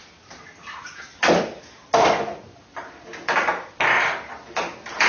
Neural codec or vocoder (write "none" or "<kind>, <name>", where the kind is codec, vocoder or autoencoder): none